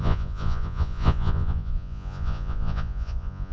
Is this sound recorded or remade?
remade